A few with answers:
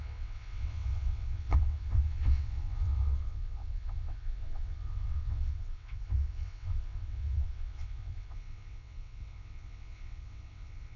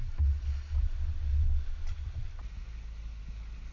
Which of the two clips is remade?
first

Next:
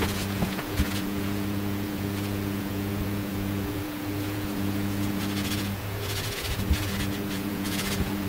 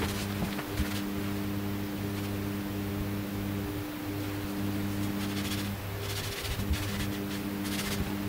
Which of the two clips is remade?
first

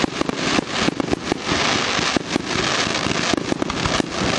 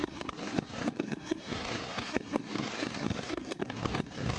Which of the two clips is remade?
second